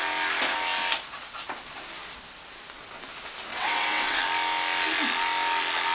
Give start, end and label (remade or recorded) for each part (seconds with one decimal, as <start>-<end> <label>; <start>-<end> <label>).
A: 0.0-3.5 recorded; 3.5-4.2 remade; 4.2-5.9 recorded